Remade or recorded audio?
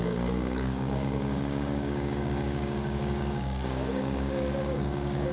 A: remade